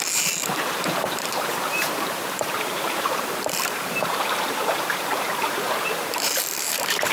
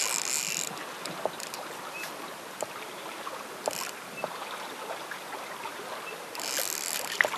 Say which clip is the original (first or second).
second